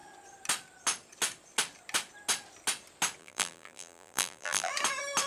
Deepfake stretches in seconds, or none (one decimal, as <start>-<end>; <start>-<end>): 3.2-4.7